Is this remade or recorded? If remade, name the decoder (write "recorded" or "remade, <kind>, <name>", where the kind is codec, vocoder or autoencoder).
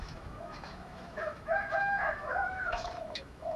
remade, autoencoder, DAC-VAE